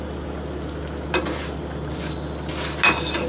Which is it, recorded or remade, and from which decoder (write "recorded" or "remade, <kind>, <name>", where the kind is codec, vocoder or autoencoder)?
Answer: recorded